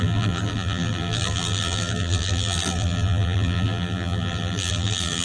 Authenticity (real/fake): fake